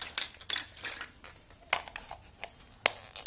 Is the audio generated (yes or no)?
no